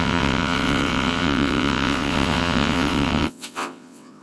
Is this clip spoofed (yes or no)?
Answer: yes